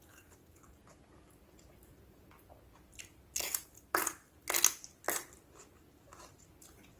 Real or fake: real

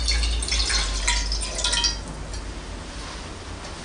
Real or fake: real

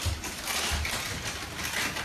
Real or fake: real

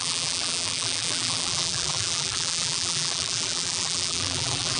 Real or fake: fake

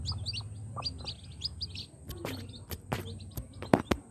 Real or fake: real